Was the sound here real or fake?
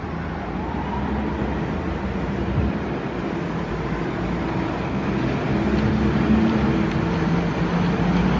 real